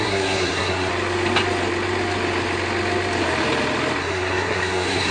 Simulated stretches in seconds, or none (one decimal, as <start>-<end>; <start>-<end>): 0.0-0.9; 4.0-5.1